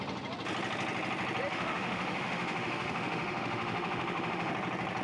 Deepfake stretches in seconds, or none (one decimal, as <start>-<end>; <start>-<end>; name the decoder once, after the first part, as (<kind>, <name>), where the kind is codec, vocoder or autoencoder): 1.5-4.5 (autoencoder, DAC-VAE)